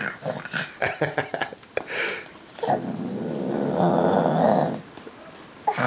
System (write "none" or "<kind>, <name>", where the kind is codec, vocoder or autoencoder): none